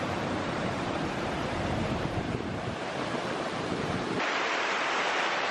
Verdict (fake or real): fake